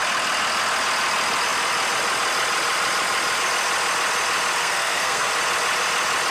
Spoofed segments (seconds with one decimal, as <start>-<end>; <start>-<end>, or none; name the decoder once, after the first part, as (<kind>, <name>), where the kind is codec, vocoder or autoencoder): 4.6-5.3 (codec, SNAC)

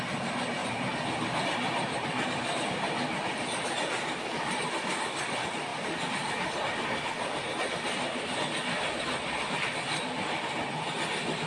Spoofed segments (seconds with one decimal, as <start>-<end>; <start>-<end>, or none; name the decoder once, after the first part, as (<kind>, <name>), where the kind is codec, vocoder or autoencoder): 5.7-6.5 (vocoder, BigVGAN v2)

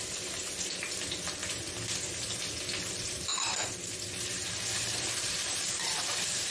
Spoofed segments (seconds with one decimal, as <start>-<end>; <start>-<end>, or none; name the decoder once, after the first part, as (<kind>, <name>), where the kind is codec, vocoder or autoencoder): 0.0-1.4 (vocoder, BigVGAN v2); 2.9-6.5

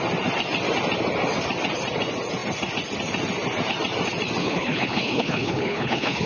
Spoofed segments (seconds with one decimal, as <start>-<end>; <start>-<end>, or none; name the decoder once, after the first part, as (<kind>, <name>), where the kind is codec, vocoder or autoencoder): 4.4-6.3 (codec, HILCodec)

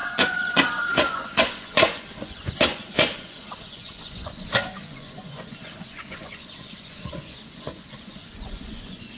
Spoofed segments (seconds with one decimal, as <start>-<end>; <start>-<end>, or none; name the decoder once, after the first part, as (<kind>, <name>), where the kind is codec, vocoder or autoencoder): 0.0-9.2 (vocoder, Vocos)

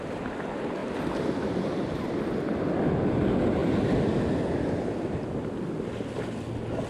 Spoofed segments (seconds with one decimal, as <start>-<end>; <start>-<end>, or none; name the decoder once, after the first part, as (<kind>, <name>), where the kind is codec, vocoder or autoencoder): none

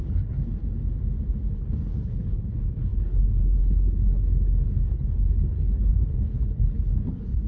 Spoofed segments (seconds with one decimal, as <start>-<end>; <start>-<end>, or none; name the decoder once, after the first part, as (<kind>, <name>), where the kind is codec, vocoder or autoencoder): 0.0-0.6 (codec, HILCodec); 1.5-7.5

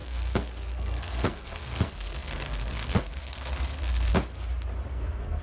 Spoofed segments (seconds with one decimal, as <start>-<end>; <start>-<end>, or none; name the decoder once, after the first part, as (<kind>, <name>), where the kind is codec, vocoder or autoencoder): 0.0-4.1 (codec, SNAC); 4.9-5.4